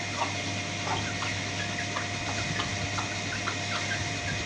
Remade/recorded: recorded